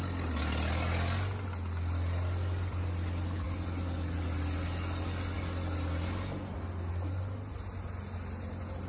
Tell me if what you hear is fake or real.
real